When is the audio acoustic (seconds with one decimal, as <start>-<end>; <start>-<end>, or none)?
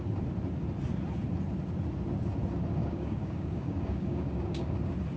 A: 0.0-2.8; 4.7-5.2